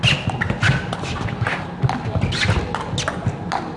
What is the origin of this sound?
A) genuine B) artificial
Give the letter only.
A